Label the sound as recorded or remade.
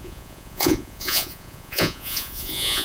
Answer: remade